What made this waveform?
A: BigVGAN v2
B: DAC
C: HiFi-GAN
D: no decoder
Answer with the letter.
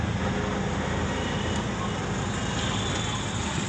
D